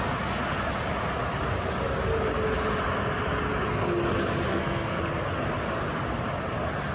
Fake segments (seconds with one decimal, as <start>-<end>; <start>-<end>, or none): 4.5-5.0